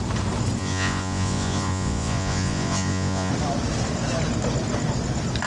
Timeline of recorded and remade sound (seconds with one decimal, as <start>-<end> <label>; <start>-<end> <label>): 0.0-0.6 recorded; 0.6-3.3 remade; 3.3-5.5 recorded